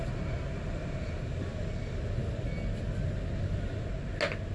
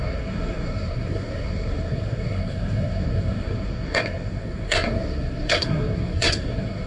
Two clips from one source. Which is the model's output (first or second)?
second